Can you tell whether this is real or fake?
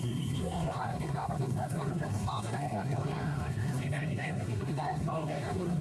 fake